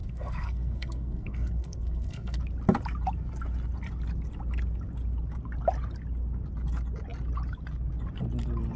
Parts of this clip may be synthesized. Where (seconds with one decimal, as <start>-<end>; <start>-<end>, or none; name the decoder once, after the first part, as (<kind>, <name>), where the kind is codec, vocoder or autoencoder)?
0.0-2.4 (codec, SNAC)